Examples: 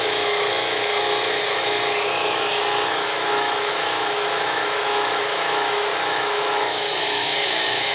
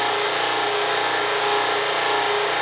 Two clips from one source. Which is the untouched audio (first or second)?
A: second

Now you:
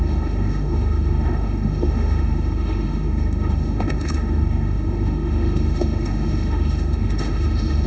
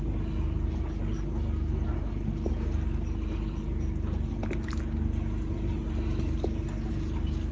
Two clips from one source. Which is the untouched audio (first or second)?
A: second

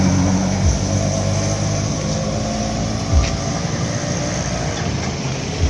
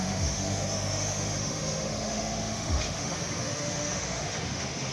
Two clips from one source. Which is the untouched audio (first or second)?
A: first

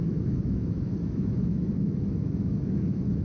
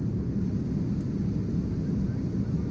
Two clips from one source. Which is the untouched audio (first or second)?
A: second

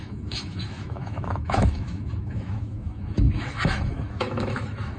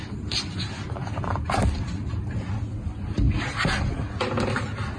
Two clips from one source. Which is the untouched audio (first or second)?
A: second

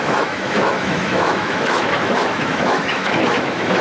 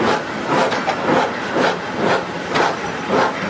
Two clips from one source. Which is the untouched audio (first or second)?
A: second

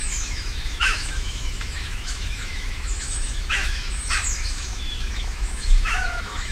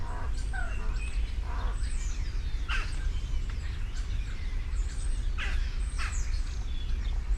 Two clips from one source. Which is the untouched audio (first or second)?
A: second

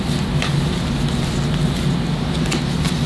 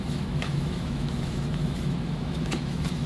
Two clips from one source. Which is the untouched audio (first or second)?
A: first